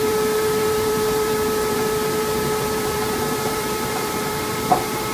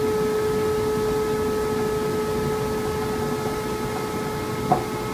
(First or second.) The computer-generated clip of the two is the first